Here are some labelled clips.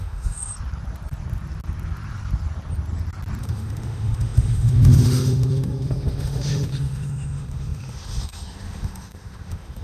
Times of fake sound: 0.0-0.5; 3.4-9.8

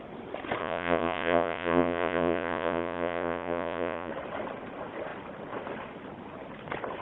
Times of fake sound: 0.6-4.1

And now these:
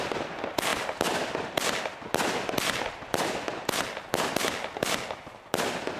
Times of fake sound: none

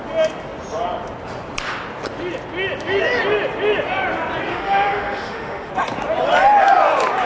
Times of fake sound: 4.5-5.7

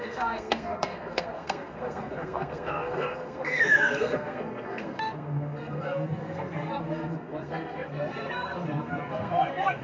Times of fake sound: 0.0-9.8

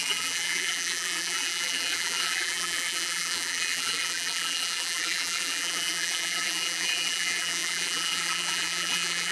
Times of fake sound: 0.0-9.3

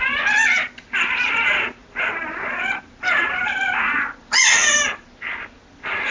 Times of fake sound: 1.8-3.7

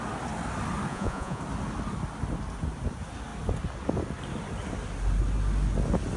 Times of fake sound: 0.9-1.4